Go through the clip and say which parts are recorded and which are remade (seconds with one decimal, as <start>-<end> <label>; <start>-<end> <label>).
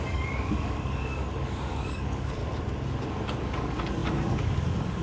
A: 0.0-2.4 remade; 2.4-3.4 recorded; 3.4-5.0 remade